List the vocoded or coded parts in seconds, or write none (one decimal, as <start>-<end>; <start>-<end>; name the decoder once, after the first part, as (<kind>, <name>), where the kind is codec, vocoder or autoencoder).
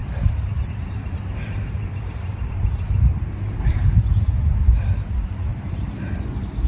0.0-4.0 (vocoder, BigVGAN v2); 5.5-6.3